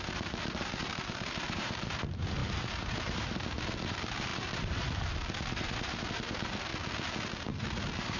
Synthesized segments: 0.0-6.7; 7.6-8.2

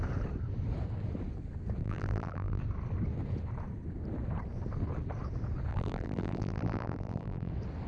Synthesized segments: 1.8-2.6; 5.7-7.5